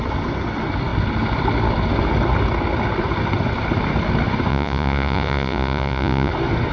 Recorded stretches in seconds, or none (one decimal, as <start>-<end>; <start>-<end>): 0.0-4.5; 6.3-6.7